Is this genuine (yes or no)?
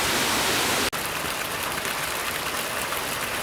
yes